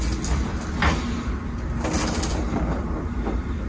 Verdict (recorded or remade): recorded